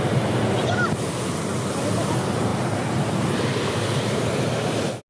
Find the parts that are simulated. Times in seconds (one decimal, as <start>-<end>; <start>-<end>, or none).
none